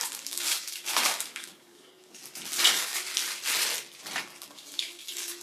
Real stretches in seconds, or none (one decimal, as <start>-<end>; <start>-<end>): 2.2-2.7; 3.1-4.2